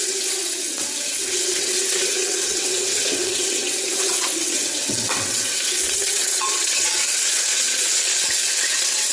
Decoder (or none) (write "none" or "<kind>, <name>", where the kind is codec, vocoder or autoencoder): vocoder, WaveNeXt